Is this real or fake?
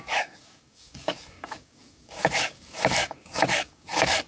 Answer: fake